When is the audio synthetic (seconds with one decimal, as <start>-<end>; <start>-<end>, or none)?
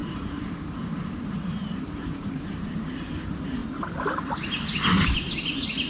0.0-3.1